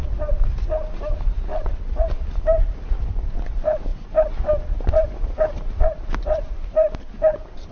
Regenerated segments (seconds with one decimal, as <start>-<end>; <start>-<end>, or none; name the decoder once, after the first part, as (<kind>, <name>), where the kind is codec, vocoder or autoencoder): none